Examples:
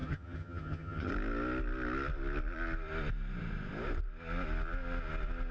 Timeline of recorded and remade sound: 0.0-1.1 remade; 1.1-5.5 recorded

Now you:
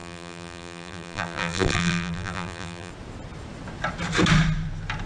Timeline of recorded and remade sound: 0.0-2.9 remade; 2.9-5.1 recorded

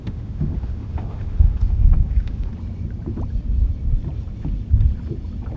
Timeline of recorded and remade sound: 0.0-2.5 remade; 2.5-5.6 recorded

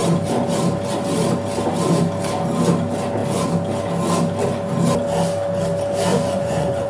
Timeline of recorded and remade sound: 0.0-6.1 recorded; 6.1-6.9 remade